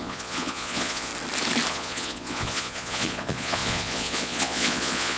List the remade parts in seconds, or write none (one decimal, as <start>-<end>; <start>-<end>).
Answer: 0.0-1.1; 1.7-5.2